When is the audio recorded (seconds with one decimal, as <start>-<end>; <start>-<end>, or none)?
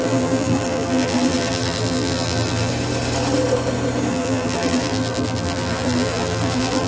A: 2.7-4.1